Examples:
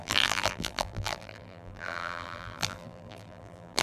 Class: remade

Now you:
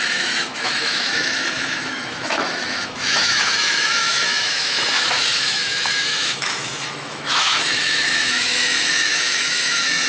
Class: remade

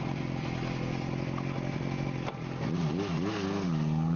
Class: recorded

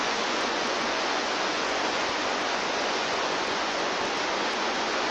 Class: remade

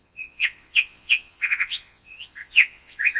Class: remade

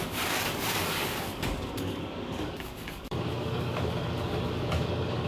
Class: remade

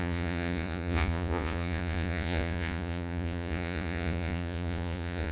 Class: remade